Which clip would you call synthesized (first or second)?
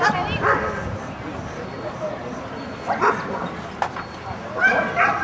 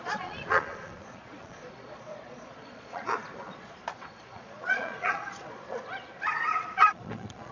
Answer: second